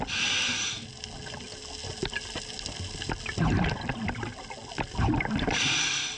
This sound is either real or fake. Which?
real